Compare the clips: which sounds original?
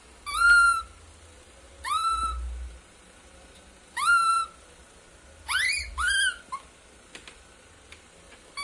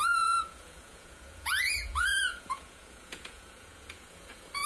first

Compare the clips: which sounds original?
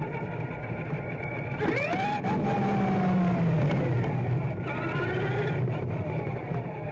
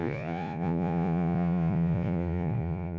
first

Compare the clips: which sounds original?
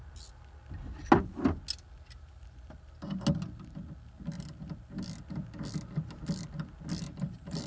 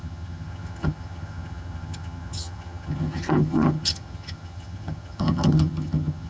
first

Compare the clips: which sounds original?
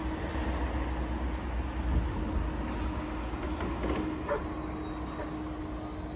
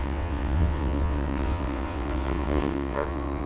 first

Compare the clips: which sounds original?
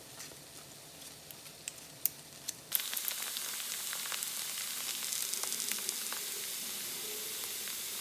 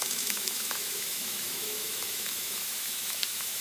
first